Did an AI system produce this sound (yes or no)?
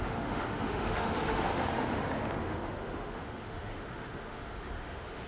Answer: yes